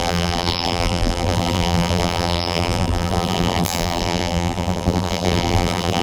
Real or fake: fake